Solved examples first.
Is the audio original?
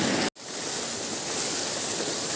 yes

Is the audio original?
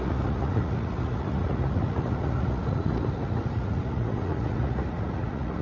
no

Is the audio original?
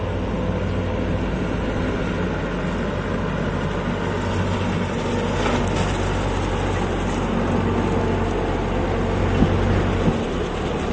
yes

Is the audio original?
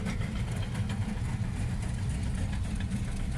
yes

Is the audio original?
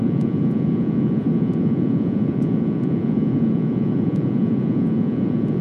no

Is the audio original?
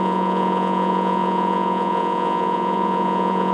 no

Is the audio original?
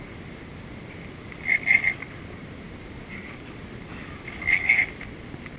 yes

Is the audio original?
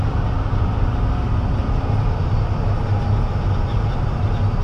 yes